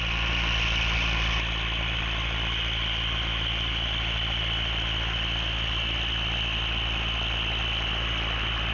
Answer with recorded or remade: recorded